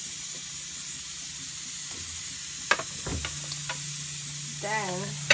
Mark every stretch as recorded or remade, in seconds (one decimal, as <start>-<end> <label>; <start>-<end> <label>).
0.0-5.3 recorded